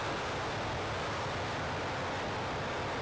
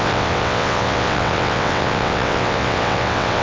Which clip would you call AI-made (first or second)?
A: second